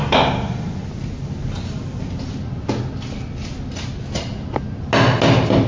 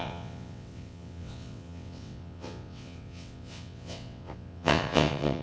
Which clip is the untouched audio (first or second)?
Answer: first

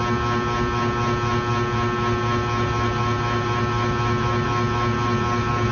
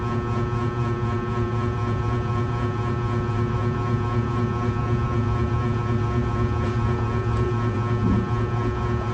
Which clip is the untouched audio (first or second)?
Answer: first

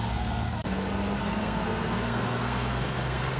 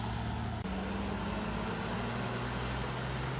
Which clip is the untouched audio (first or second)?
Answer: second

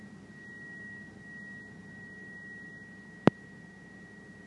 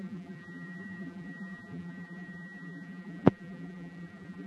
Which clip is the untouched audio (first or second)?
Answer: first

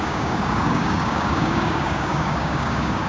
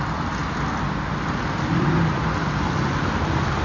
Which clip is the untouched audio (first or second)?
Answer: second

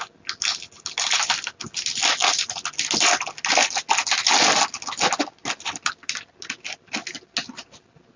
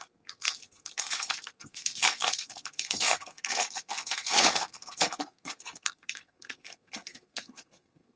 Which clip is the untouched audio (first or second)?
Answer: first